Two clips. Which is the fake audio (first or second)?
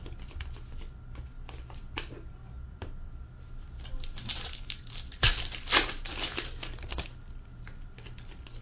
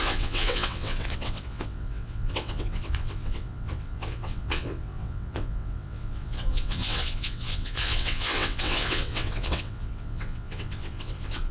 second